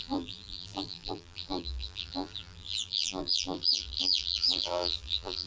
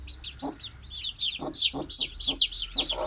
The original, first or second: second